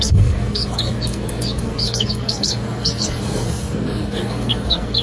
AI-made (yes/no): yes